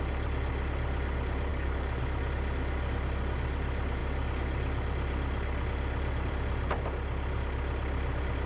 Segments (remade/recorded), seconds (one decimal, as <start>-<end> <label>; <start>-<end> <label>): 0.0-1.5 recorded; 1.5-2.0 remade; 2.0-8.5 recorded